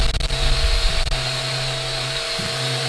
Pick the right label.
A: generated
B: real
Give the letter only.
B